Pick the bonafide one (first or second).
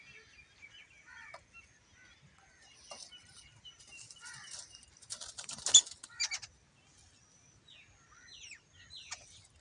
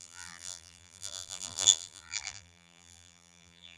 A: first